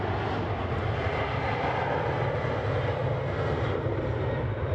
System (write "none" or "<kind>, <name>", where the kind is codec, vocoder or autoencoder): none